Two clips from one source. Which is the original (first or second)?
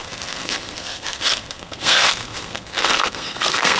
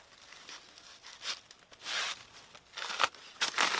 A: second